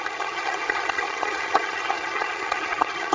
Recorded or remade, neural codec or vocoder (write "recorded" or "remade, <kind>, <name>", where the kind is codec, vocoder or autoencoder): remade, vocoder, HiFi-GAN